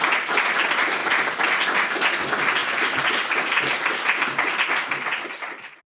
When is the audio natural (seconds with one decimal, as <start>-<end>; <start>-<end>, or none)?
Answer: 0.0-5.9